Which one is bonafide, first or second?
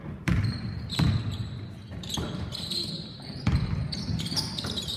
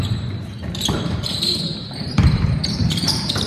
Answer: first